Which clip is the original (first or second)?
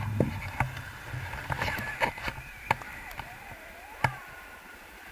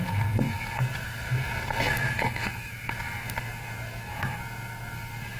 first